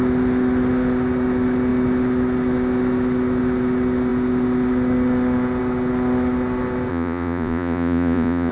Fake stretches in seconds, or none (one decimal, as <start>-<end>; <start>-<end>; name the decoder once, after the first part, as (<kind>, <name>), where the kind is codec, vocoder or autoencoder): 6.9-8.5 (vocoder, Vocos)